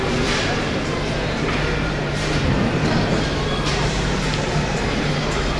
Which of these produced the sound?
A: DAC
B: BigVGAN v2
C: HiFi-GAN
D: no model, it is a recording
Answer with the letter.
B